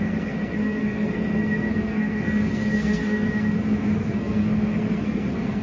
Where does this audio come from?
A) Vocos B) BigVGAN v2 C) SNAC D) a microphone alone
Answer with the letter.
C